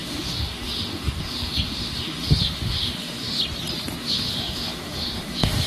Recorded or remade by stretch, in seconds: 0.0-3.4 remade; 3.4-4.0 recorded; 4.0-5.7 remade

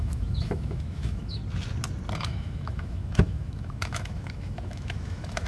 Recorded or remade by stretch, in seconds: 0.0-1.4 remade; 1.4-2.2 recorded; 2.2-5.5 remade

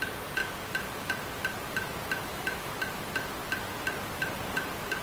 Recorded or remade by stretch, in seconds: 0.0-2.3 recorded; 2.3-2.9 remade; 2.9-5.0 recorded

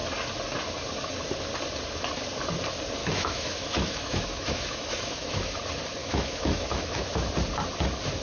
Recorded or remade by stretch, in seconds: 0.0-3.0 recorded; 3.0-5.6 remade; 5.6-6.0 recorded; 6.0-7.1 remade; 7.1-8.2 recorded

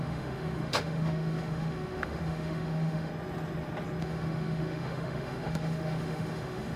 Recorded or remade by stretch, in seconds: 0.0-3.1 remade; 3.1-4.0 recorded; 4.0-6.8 remade

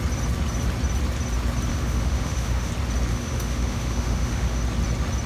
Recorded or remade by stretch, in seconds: 0.0-1.7 recorded; 1.7-2.7 remade; 2.7-3.1 recorded; 3.1-4.6 remade; 4.6-5.3 recorded

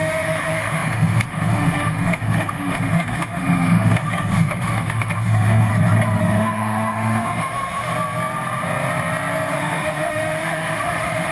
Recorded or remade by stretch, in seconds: 0.0-5.7 remade; 5.7-6.2 recorded; 6.2-7.9 remade; 7.9-9.5 recorded; 9.5-11.3 remade